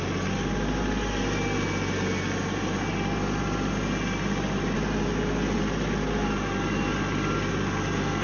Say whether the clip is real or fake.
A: real